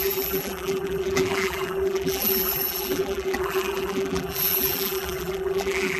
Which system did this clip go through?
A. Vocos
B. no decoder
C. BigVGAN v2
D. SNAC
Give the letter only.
C